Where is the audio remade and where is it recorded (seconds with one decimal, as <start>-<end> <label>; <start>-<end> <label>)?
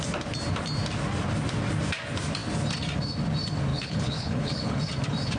0.0-3.7 recorded; 3.7-4.8 remade; 4.8-5.4 recorded